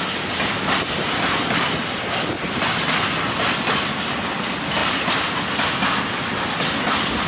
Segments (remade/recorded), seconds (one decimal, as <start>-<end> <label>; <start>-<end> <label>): 0.0-7.3 recorded